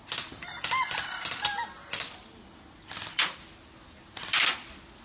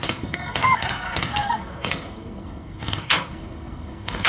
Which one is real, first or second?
first